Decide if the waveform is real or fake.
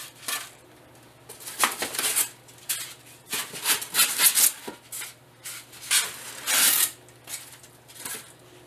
real